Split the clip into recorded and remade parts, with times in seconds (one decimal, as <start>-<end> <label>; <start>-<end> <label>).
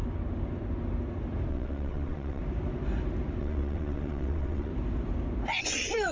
0.0-1.5 recorded; 1.5-2.4 remade; 2.4-3.4 recorded; 3.4-4.7 remade; 4.7-5.6 recorded; 5.6-6.1 remade